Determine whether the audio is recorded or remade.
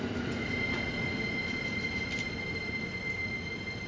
recorded